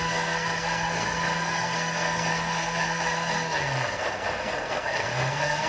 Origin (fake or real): fake